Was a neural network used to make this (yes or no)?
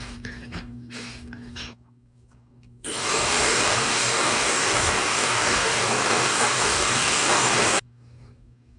yes